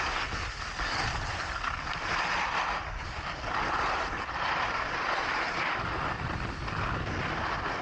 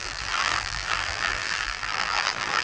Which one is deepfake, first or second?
second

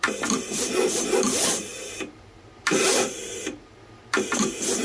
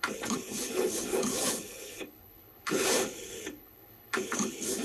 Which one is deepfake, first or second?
second